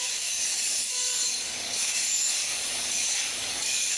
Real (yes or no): no